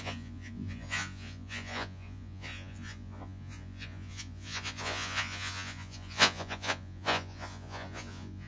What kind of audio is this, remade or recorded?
remade